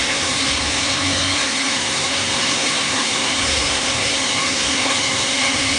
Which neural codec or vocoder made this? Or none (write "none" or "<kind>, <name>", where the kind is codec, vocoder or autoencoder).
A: codec, SNAC